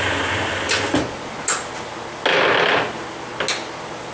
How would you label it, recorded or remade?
recorded